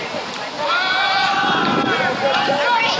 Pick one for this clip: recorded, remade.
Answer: recorded